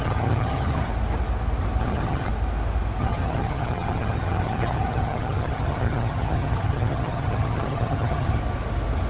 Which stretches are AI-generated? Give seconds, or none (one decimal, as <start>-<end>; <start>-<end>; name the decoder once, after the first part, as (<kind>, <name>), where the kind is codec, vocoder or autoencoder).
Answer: 0.0-0.9 (vocoder, HiFi-GAN); 1.8-2.3; 3.0-8.4